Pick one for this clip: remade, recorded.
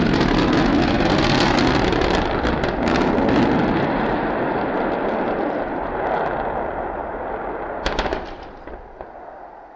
recorded